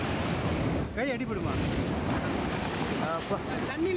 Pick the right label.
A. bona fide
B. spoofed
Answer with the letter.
A